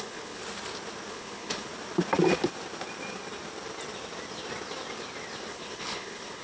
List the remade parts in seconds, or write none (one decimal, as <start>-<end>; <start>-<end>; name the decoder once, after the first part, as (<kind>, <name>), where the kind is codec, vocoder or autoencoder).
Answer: 0.0-0.4 (codec, HILCodec); 1.1-1.7; 5.5-6.4